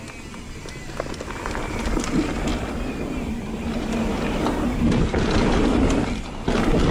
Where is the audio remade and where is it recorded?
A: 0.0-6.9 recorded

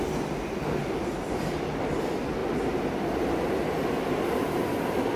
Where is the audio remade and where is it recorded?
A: 0.0-0.8 recorded; 0.8-1.9 remade; 1.9-5.2 recorded